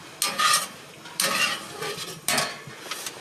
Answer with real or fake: real